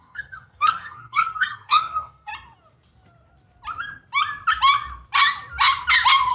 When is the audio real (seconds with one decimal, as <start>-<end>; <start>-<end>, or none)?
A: 2.3-6.3